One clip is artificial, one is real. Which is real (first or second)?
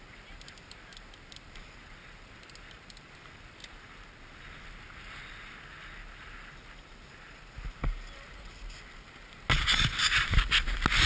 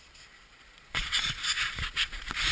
first